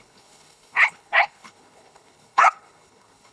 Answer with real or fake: fake